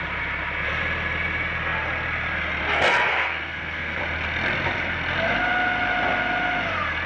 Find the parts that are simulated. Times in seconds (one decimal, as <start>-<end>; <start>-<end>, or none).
3.1-4.0